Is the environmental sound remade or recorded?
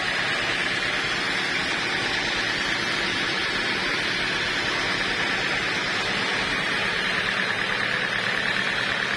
recorded